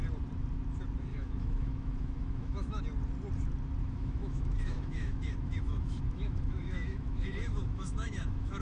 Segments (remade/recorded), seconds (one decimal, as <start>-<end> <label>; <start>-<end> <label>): 0.0-1.1 recorded; 1.1-2.8 remade; 2.8-3.8 recorded; 3.8-8.6 remade